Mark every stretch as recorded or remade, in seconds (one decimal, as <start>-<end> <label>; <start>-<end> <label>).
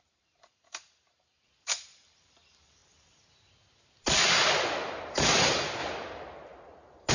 0.0-2.8 remade; 2.8-5.1 recorded; 5.1-5.8 remade; 5.8-7.1 recorded